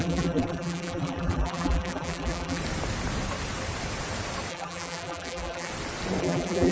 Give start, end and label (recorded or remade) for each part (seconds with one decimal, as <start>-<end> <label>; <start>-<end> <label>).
0.0-2.6 remade; 2.6-4.5 recorded; 4.5-5.7 remade; 5.7-6.2 recorded; 6.2-6.7 remade